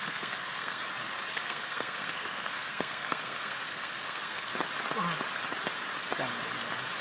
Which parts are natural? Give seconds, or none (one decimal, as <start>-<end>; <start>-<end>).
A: 0.8-1.3; 4.5-7.0